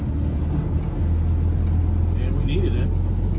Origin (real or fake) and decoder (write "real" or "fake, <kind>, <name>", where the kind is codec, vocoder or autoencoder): real